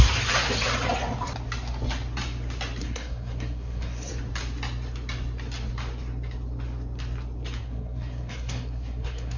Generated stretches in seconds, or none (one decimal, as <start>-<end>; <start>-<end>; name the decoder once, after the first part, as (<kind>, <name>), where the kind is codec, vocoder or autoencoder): 2.8-4.1 (codec, SNAC); 7.6-9.4